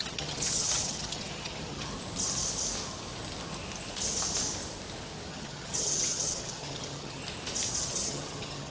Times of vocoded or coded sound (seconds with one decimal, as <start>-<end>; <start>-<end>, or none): 0.0-1.9; 5.3-7.2; 7.8-8.7